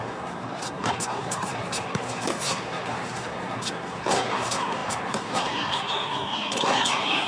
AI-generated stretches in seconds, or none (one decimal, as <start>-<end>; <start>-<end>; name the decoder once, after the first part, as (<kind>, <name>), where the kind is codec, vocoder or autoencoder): 0.0-7.3 (codec, SNAC)